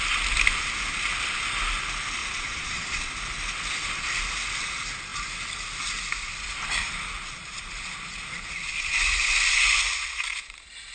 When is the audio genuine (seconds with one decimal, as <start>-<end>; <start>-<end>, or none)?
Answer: 0.0-2.2; 3.1-10.9